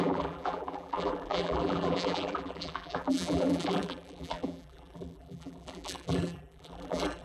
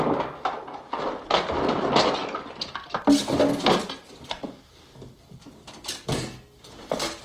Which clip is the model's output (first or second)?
first